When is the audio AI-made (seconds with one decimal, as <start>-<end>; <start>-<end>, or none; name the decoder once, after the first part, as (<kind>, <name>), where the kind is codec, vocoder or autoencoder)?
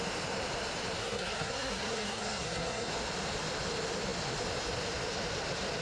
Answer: 1.0-2.9 (codec, SNAC)